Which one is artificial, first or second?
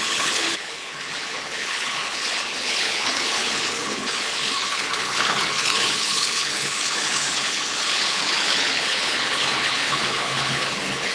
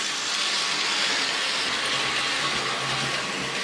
first